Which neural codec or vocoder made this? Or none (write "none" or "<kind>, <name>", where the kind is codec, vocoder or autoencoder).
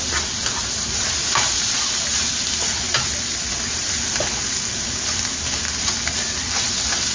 none